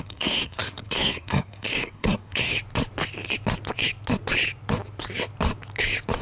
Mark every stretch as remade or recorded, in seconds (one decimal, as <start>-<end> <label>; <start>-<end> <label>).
0.0-2.5 remade; 2.5-6.2 recorded